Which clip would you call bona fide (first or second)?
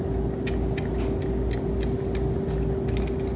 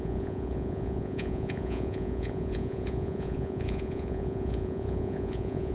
first